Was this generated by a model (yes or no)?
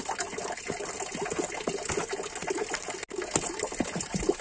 no